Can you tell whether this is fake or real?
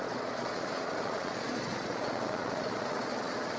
fake